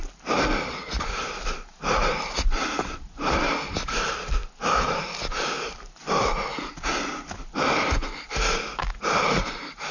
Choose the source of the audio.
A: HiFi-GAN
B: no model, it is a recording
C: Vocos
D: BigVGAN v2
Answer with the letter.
B